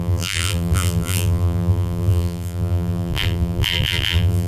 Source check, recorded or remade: remade